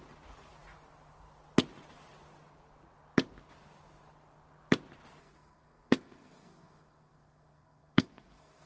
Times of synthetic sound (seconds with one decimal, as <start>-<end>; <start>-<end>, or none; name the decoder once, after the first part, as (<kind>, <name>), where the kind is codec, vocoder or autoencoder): 5.2-8.7 (codec, SNAC)